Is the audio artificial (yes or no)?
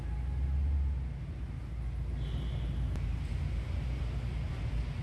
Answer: no